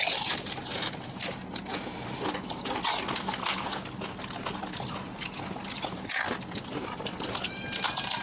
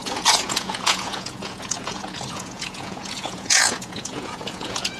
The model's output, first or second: second